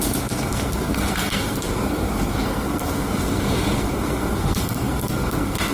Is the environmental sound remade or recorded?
remade